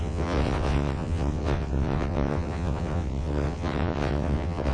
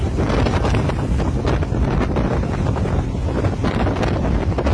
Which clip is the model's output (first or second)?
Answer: first